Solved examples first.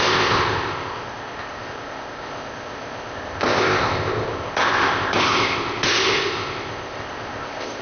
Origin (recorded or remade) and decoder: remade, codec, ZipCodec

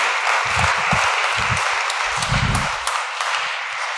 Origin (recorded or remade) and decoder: recorded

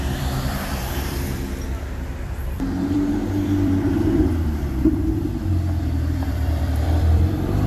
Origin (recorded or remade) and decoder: remade, vocoder, BigVGAN v2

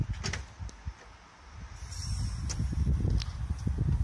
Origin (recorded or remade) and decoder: recorded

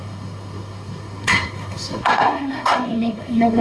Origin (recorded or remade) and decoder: remade, codec, SNAC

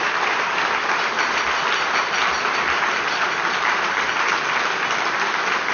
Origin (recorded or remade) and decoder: recorded